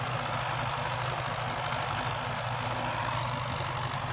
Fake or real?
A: real